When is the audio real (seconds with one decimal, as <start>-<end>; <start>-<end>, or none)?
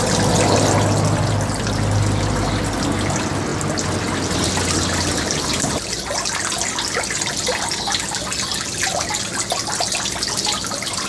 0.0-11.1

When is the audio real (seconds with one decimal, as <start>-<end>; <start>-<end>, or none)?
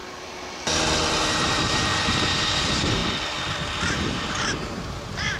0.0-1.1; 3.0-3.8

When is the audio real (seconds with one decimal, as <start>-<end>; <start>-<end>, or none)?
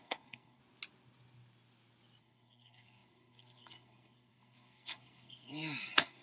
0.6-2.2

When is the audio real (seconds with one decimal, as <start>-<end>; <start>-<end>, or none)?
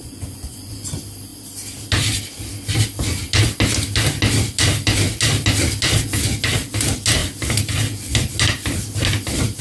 0.9-9.6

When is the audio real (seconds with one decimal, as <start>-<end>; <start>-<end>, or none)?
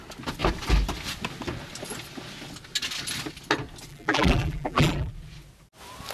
0.0-3.9; 5.1-6.1